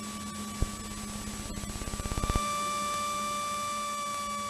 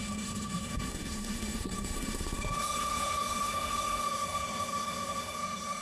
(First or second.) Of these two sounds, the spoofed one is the second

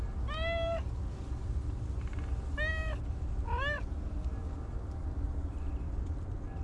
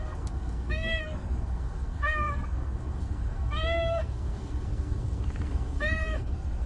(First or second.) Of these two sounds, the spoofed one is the second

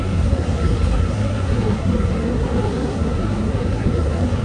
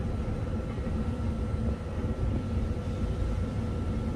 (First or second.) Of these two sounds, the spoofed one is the first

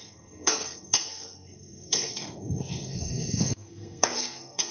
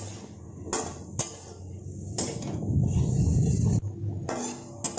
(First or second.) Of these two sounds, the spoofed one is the first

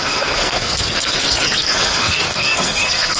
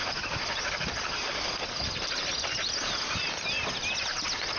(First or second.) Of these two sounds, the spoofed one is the first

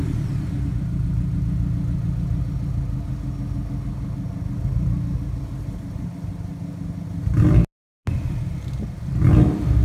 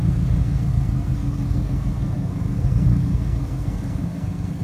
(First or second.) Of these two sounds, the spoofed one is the second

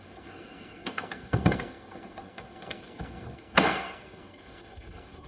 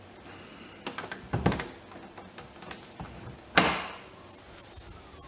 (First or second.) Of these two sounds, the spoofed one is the first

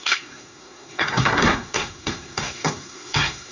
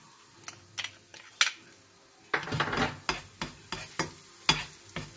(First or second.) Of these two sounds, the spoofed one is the first